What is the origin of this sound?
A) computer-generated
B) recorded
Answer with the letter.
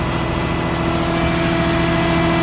B